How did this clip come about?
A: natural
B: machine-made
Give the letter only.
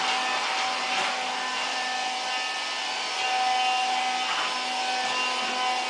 A